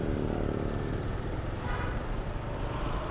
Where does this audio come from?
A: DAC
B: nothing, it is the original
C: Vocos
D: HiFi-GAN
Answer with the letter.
B